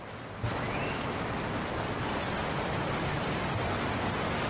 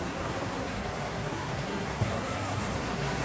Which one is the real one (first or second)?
first